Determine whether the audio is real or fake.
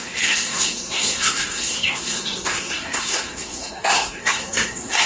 fake